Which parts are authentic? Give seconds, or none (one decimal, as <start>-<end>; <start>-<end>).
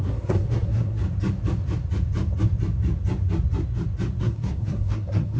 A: 1.0-4.2